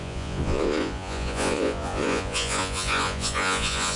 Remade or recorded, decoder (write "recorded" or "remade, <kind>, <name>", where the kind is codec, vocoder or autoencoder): remade, vocoder, Vocos